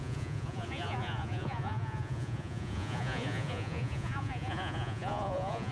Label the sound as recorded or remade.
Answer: remade